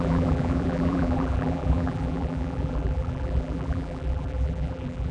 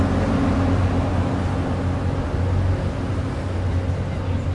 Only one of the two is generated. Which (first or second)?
first